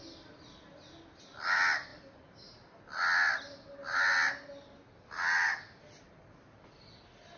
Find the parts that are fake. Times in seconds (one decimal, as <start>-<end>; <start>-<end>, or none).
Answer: none